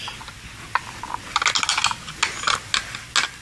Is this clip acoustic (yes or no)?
yes